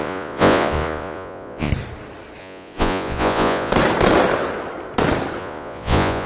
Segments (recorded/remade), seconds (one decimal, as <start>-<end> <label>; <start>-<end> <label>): 0.0-1.7 remade; 1.7-2.4 recorded; 2.4-3.7 remade; 3.7-5.4 recorded; 5.4-6.3 remade

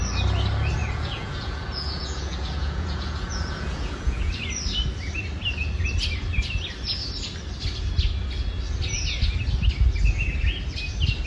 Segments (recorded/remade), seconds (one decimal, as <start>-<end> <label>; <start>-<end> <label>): 0.0-0.8 recorded; 0.8-4.3 remade; 4.3-11.3 recorded